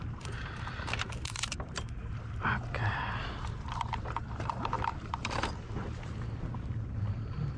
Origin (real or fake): fake